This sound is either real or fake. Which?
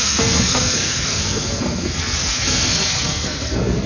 fake